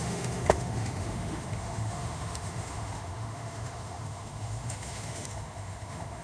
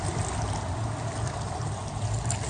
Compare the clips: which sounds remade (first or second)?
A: first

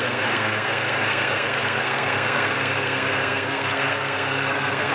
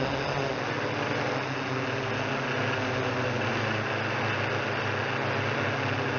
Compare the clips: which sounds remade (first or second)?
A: first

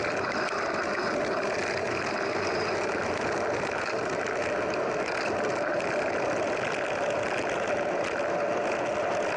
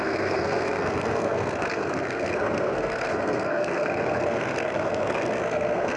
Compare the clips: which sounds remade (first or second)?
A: second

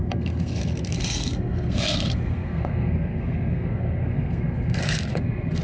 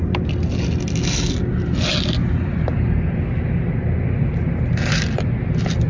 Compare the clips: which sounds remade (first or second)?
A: first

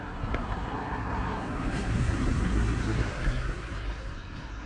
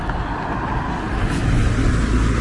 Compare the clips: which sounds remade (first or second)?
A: first